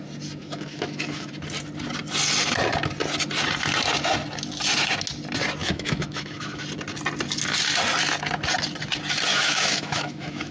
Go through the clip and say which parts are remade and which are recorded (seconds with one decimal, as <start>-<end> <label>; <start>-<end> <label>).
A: 0.0-0.4 recorded; 0.4-1.3 remade; 1.3-5.6 recorded; 5.6-6.6 remade; 6.6-9.3 recorded; 9.3-10.5 remade